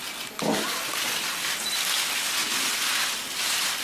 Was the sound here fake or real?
real